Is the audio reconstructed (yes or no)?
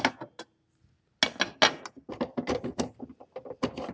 no